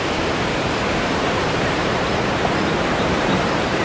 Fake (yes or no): yes